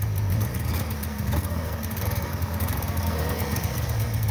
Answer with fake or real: fake